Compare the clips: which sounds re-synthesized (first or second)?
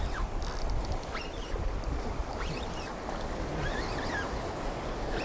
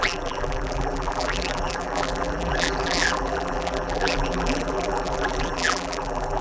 second